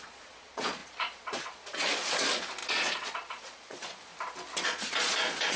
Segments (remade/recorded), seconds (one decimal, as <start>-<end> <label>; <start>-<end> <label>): 0.0-4.1 remade; 4.1-4.6 recorded; 4.6-5.6 remade